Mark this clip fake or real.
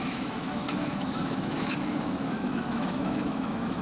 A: fake